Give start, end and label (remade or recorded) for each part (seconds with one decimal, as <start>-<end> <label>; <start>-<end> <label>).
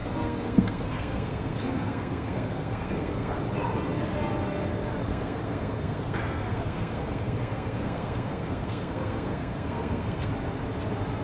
0.0-3.4 remade; 3.4-5.1 recorded; 5.1-10.3 remade; 10.3-11.2 recorded